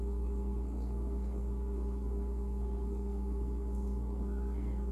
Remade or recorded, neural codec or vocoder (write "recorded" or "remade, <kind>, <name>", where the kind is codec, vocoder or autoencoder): remade, codec, SNAC